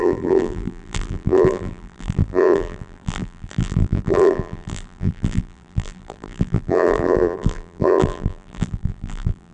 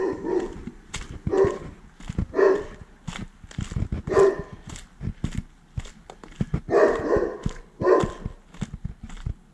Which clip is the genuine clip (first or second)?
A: second